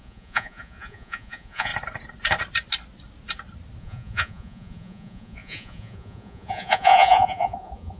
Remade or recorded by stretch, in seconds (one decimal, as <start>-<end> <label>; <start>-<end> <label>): 0.0-1.7 remade; 1.7-3.8 recorded; 3.8-8.0 remade